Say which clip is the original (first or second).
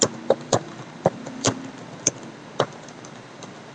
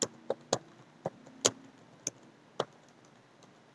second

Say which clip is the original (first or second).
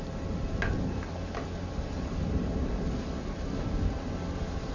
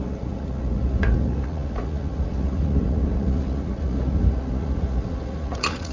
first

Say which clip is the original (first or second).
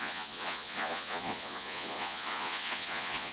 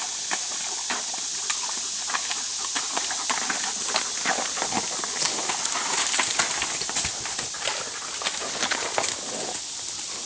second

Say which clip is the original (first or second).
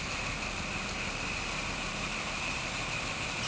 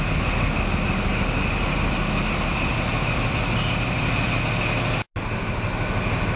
second